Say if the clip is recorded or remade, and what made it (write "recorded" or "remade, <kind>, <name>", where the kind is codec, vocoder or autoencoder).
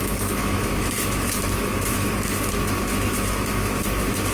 remade, autoencoder, DAC-VAE